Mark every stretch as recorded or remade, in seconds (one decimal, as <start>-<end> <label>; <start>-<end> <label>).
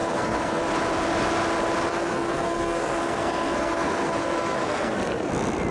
0.0-0.6 remade; 0.6-1.9 recorded; 1.9-5.3 remade; 5.3-5.7 recorded